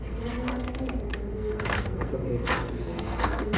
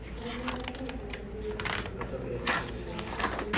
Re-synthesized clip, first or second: first